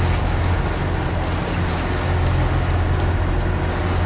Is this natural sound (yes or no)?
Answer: yes